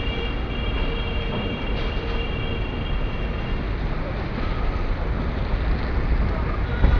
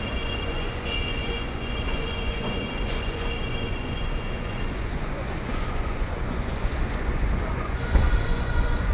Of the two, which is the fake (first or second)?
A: second